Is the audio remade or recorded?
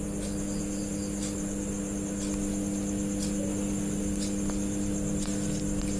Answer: recorded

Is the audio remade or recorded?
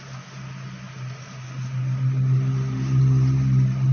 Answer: recorded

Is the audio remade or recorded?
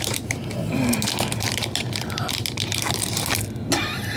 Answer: recorded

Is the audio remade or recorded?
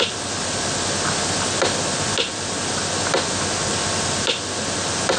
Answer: recorded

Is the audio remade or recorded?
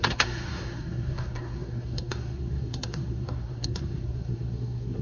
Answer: remade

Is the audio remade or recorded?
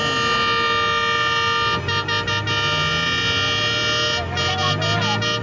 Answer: recorded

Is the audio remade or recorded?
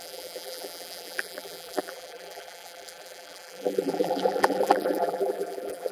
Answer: remade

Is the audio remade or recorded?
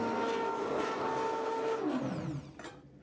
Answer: recorded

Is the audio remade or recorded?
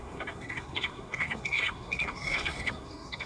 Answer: remade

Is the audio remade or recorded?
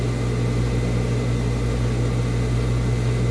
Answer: recorded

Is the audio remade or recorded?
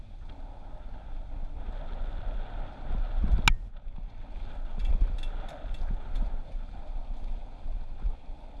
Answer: recorded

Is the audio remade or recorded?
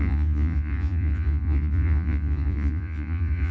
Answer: remade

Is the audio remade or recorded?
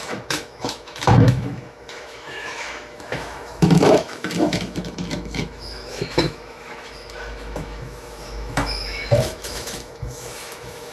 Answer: remade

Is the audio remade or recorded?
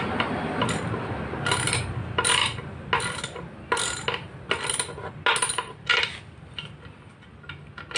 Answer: recorded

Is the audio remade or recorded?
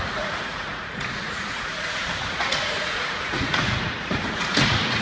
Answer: remade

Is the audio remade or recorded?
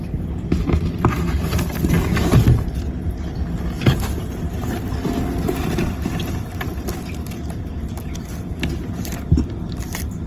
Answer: recorded